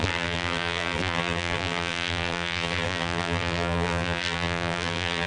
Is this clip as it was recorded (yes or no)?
no